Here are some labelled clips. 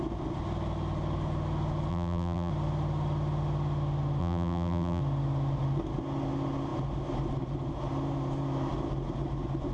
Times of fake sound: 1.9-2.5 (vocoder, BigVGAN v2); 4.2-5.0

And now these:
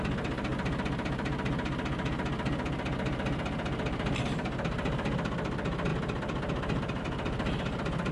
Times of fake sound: none

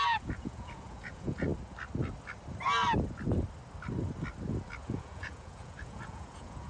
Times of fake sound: 0.0-1.5 (vocoder, Vocos); 4.8-6.7

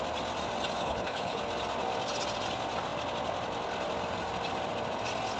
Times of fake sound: 0.8-1.4 (codec, HILCodec)

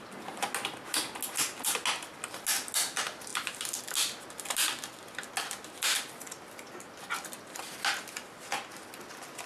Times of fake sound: none

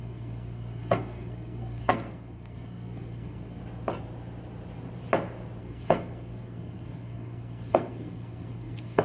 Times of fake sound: 0.0-3.6 (codec, SNAC); 5.6-9.0

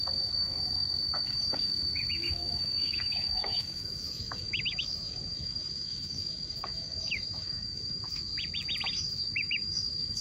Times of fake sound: 0.0-8.3 (autoencoder, DAC-VAE); 8.9-10.2